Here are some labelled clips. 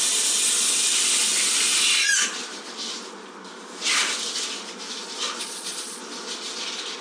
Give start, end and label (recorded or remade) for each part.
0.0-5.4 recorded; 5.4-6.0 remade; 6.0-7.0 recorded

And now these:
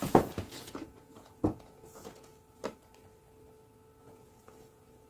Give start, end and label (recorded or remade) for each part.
0.0-2.3 remade; 2.3-4.0 recorded; 4.0-5.1 remade

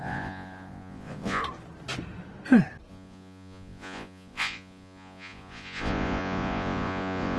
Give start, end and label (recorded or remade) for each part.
0.0-1.4 remade; 1.4-2.9 recorded; 2.9-7.4 remade

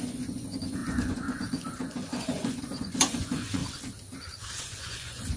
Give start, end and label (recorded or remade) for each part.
0.0-3.6 remade; 3.6-4.6 recorded; 4.6-5.4 remade

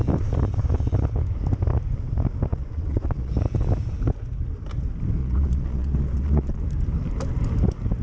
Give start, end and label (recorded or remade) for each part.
0.0-2.5 recorded; 2.5-3.3 remade; 3.3-5.2 recorded; 5.2-6.6 remade; 6.6-8.0 recorded